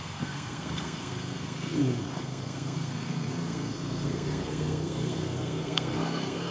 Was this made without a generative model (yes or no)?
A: no